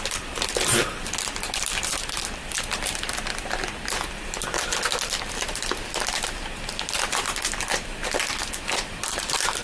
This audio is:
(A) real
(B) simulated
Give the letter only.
B